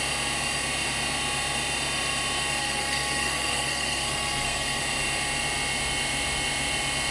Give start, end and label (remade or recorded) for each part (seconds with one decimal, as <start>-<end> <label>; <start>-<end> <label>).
0.0-2.6 recorded; 2.6-4.8 remade; 4.8-7.1 recorded